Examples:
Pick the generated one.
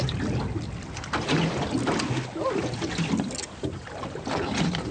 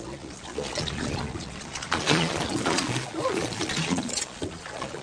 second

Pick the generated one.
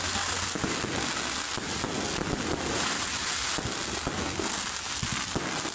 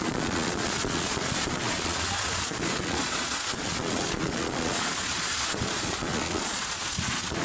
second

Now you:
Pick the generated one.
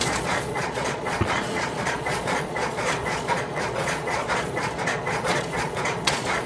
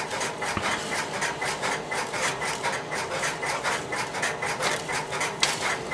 first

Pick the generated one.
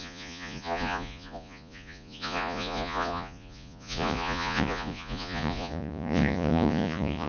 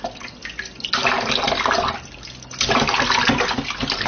first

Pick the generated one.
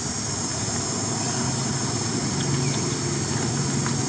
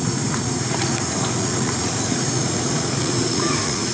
second